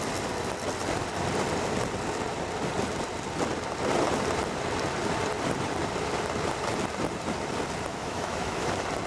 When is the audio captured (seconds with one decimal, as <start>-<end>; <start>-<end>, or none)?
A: 0.0-7.9; 8.7-9.1